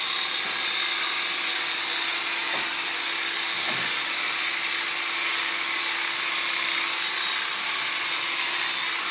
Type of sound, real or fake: real